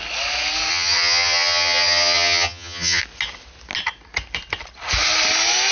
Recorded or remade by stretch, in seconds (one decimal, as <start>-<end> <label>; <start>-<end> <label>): 0.0-0.7 recorded; 0.7-3.0 remade; 3.0-5.7 recorded